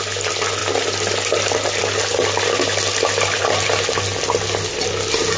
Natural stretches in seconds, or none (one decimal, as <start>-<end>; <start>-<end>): 0.0-5.4